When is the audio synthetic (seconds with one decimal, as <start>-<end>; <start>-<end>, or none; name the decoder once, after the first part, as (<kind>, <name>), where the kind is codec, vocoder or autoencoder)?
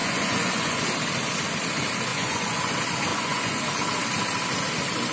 0.0-0.8 (vocoder, Vocos); 2.1-2.7; 3.1-3.6